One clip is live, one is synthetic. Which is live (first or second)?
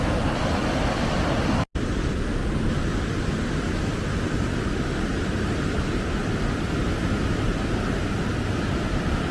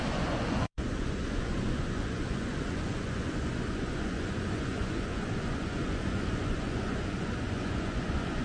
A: first